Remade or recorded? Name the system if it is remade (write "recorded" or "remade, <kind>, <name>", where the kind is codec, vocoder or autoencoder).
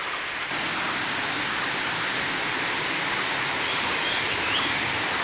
remade, vocoder, BigVGAN v2